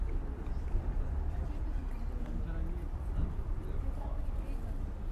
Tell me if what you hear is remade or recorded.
remade